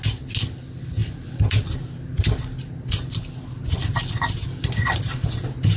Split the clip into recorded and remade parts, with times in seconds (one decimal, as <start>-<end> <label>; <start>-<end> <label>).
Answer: 0.0-5.8 recorded